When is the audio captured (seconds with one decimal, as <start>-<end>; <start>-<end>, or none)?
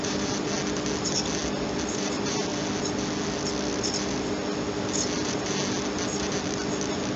0.0-7.2